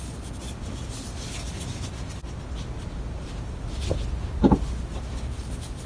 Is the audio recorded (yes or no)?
yes